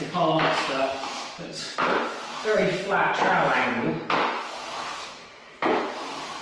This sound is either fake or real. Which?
fake